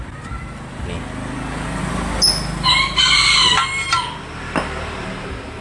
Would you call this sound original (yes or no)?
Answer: yes